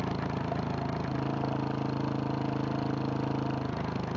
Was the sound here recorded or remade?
recorded